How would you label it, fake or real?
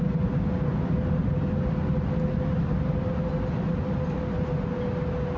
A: real